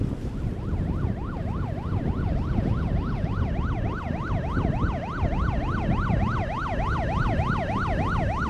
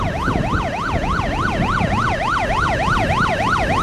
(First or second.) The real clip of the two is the first